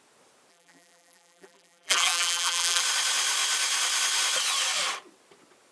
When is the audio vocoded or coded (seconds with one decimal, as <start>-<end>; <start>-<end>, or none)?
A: 0.5-2.8